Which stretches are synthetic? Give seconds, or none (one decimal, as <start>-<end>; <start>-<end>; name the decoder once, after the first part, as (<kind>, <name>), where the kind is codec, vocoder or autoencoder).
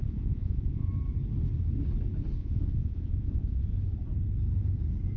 0.0-0.9 (vocoder, Vocos); 2.4-3.6